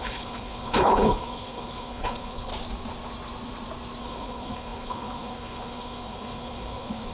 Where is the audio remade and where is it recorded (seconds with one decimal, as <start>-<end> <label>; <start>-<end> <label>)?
0.0-2.5 remade; 2.5-4.0 recorded; 4.0-7.1 remade